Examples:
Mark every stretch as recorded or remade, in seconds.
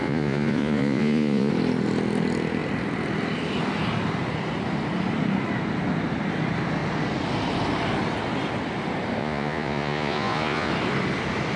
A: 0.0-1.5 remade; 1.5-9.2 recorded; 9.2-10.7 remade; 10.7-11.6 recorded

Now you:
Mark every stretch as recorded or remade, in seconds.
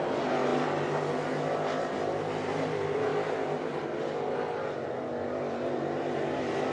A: 0.0-6.7 recorded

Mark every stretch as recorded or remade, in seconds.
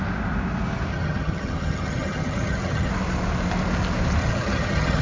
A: 0.0-0.9 recorded; 0.9-2.9 remade; 2.9-4.2 recorded; 4.2-5.0 remade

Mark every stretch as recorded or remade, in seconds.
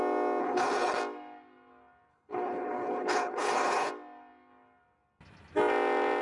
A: 0.0-0.4 recorded; 0.4-1.0 remade; 1.0-2.1 recorded; 2.1-3.9 remade; 3.9-6.2 recorded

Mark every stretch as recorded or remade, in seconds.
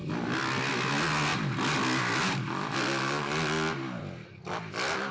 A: 0.0-5.1 recorded